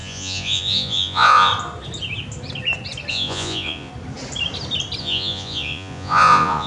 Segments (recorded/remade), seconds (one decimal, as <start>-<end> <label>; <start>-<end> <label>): 0.0-1.5 remade; 1.5-3.1 recorded; 3.1-3.9 remade; 3.9-5.0 recorded; 5.0-6.7 remade